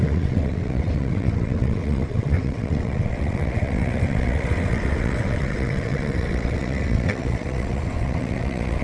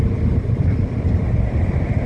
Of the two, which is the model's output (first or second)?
first